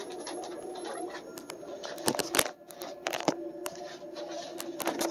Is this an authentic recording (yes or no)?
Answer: yes